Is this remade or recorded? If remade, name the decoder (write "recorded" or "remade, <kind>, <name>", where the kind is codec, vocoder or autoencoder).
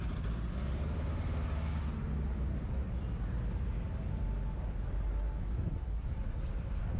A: recorded